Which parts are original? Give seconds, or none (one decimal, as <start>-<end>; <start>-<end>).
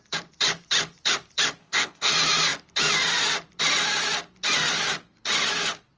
0.0-1.6; 2.1-6.0